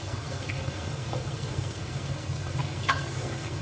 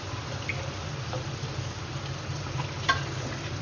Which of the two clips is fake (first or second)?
first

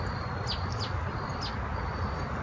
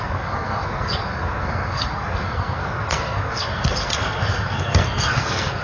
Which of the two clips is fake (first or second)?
second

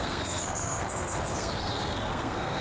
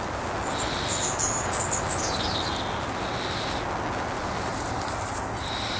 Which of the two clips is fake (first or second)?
first